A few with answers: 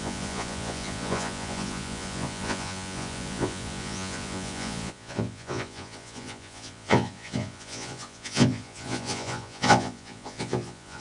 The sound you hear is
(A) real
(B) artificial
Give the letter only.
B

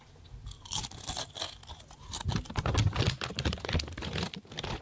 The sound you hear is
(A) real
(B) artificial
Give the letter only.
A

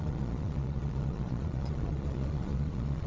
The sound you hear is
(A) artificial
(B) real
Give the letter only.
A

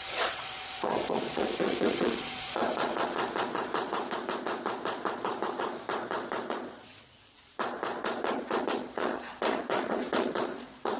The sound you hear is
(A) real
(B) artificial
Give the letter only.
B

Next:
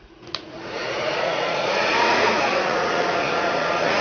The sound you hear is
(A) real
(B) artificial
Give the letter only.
B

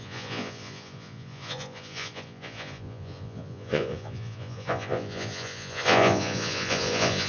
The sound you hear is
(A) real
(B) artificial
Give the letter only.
B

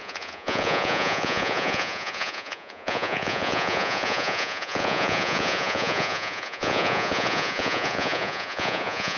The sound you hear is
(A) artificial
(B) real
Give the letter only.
A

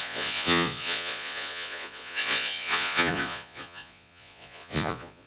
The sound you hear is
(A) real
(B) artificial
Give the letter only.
B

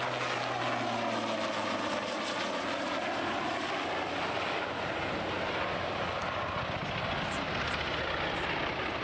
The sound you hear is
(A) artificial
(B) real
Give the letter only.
B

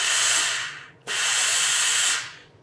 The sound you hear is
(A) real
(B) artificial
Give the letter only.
B